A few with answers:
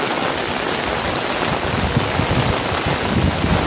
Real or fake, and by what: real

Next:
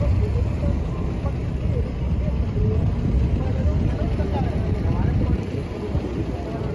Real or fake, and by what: real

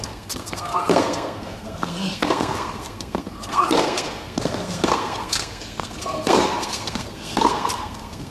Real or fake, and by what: fake, codec, SNAC